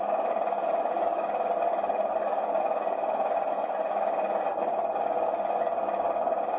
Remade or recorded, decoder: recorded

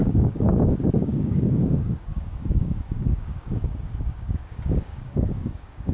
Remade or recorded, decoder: remade, codec, DAC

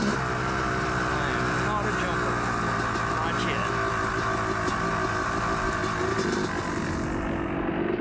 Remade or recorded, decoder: recorded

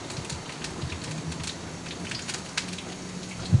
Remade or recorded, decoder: recorded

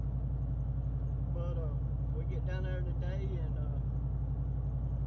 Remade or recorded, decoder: recorded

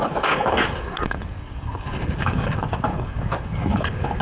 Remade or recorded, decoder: remade, codec, DAC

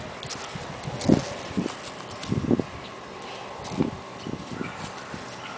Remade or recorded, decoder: recorded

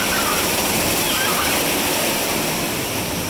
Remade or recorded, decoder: recorded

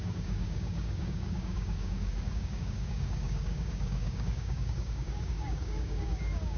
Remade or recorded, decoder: remade, codec, DAC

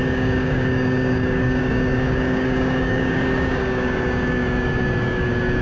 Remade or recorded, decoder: remade, codec, DAC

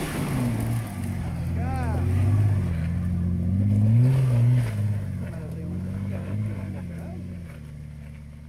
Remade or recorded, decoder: recorded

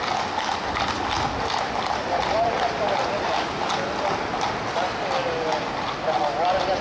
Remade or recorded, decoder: recorded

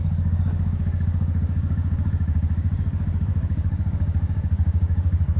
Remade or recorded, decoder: remade, codec, DAC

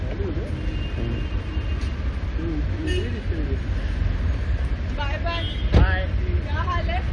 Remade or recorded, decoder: recorded